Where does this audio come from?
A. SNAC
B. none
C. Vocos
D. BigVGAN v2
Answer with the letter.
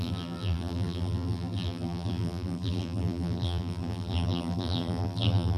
D